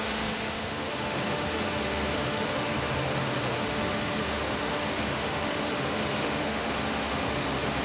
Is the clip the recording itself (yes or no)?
no